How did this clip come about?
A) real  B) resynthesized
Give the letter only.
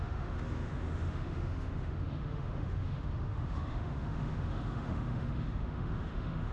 B